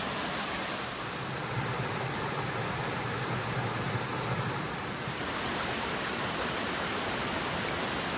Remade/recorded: recorded